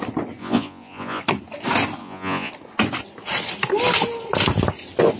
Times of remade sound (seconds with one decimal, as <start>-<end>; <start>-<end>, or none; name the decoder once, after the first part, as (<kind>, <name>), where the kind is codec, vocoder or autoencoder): 0.4-1.2 (vocoder, Vocos); 2.0-2.5